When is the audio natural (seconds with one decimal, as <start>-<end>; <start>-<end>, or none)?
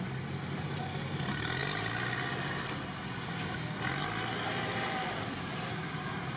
0.0-6.4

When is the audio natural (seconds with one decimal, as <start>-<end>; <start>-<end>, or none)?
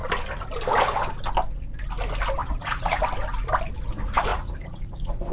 0.0-2.4; 3.0-4.3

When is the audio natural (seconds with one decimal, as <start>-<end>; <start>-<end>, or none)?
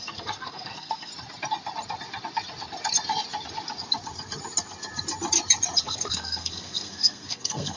1.1-5.8